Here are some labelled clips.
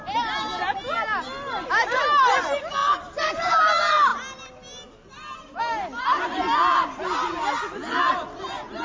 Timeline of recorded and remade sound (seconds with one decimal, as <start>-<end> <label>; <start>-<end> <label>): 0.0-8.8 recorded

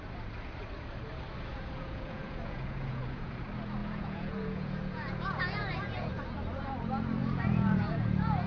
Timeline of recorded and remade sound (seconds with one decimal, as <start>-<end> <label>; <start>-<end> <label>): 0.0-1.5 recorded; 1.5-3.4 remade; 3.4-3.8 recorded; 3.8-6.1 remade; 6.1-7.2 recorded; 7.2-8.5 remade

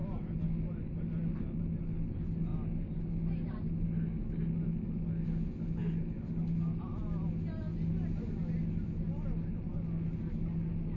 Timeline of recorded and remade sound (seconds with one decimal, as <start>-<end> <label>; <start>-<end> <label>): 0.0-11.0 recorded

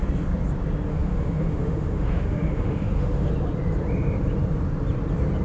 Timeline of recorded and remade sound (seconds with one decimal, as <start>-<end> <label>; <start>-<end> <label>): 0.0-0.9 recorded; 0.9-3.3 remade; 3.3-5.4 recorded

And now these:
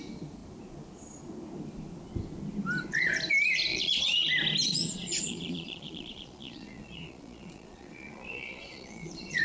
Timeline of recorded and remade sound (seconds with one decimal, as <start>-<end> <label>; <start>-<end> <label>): 0.0-3.7 recorded; 3.7-4.3 remade; 4.3-4.7 recorded; 4.7-9.4 remade

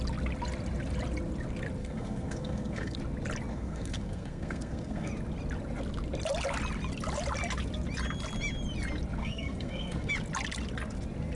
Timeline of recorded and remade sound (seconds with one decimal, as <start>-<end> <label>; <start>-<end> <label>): 0.0-1.8 recorded; 1.8-3.0 remade; 3.0-3.5 recorded; 3.5-5.1 remade; 5.1-9.2 recorded; 9.2-10.1 remade; 10.1-11.4 recorded

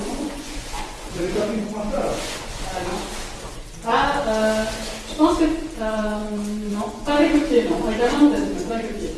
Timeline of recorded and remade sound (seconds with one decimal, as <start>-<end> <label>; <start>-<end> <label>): 0.0-2.9 remade; 2.9-5.8 recorded; 5.8-9.2 remade

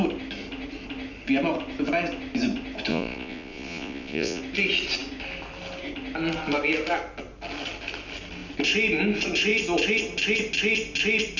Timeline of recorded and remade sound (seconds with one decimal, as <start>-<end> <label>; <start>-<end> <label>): 0.0-2.9 recorded; 2.9-4.4 remade; 4.4-11.4 recorded